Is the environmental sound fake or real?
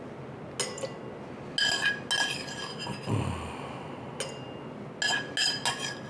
real